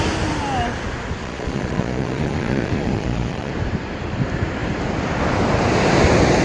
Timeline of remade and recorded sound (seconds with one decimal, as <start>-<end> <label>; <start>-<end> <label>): 0.0-1.2 recorded; 1.2-3.5 remade; 3.5-6.4 recorded